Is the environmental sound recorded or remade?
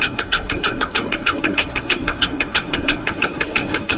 remade